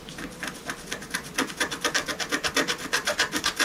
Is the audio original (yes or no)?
yes